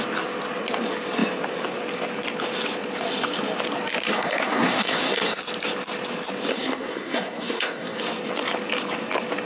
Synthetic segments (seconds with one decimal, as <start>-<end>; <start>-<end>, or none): 4.1-5.4; 6.5-8.0